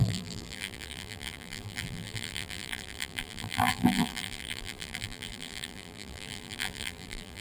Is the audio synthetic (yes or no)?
yes